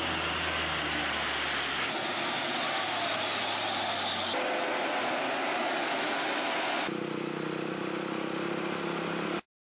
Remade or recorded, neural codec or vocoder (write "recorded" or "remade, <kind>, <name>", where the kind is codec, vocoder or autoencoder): recorded